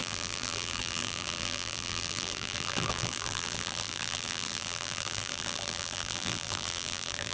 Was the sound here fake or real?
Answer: fake